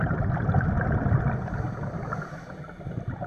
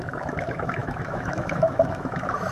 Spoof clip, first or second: second